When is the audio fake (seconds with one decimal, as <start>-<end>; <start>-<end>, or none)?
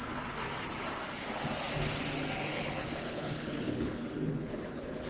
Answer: 2.5-5.1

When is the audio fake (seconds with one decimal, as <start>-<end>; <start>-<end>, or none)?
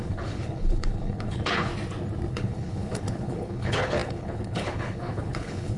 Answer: 0.0-1.7; 2.3-5.8